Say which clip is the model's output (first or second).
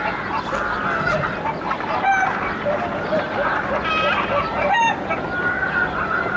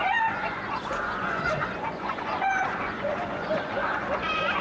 second